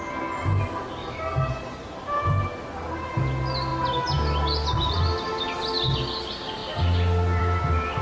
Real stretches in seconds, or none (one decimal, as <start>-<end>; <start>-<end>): 0.0-8.0